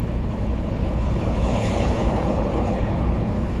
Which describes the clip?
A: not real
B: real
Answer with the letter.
A